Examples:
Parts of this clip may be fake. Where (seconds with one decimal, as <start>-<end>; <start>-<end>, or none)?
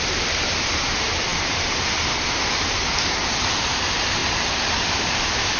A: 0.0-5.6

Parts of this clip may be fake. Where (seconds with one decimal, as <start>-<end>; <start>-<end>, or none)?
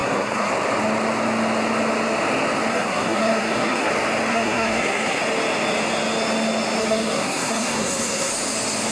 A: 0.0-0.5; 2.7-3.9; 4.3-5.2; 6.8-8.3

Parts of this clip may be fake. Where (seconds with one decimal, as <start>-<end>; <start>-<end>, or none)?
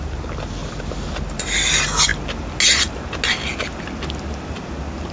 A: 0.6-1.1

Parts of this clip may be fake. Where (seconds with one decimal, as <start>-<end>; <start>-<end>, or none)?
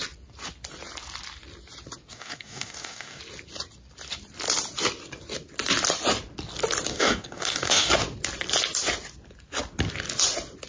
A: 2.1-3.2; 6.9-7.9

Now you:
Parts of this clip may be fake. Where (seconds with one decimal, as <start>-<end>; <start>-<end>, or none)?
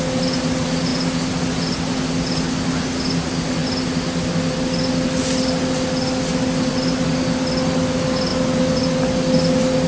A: none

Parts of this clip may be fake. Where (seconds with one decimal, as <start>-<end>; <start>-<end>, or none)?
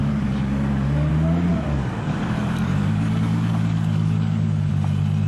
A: 0.0-1.1; 1.5-4.7